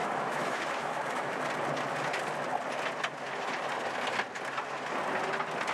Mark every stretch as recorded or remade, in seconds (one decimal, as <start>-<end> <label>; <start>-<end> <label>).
0.0-1.4 remade; 1.4-5.7 recorded

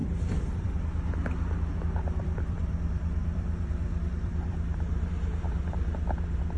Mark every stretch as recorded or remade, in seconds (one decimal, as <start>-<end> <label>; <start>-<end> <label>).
0.0-0.8 remade; 0.8-1.7 recorded; 1.7-5.1 remade; 5.1-6.6 recorded